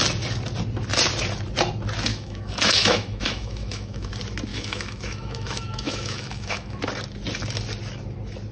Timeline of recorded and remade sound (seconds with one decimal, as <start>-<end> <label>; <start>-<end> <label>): 0.0-2.1 recorded; 2.1-4.1 remade; 4.1-4.5 recorded; 4.5-6.8 remade; 6.8-8.5 recorded